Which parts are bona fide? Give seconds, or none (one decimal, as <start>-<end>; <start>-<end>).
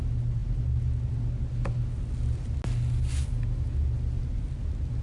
0.0-5.0